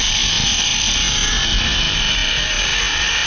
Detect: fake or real real